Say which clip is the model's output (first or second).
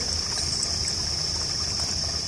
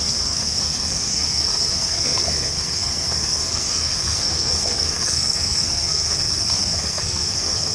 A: second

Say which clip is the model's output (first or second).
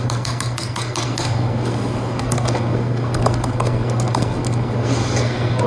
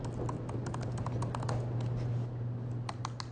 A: first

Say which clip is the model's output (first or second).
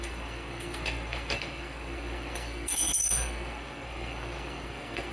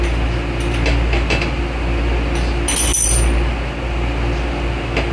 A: first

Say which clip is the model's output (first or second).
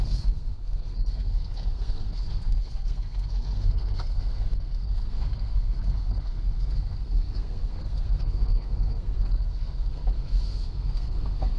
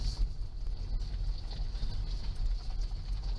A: first